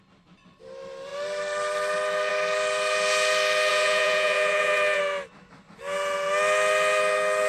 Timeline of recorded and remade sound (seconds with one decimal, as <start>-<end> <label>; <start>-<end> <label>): 0.0-3.7 recorded; 3.7-5.0 remade; 5.0-7.5 recorded